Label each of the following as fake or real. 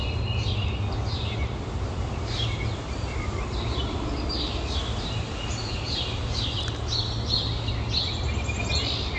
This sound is real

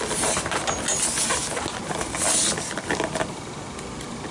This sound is real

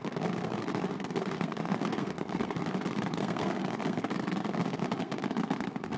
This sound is fake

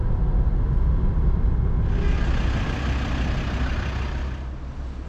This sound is real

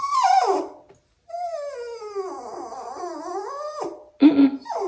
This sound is real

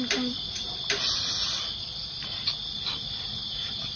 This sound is real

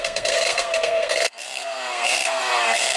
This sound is fake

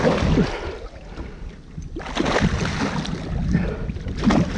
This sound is real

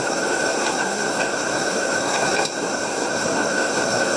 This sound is fake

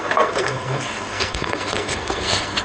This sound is fake